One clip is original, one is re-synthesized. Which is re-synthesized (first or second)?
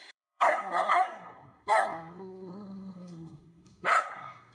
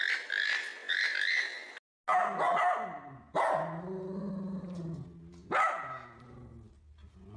first